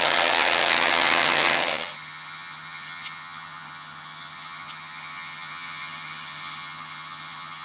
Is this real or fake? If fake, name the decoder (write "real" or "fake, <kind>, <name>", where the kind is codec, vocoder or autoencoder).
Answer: fake, vocoder, HiFi-GAN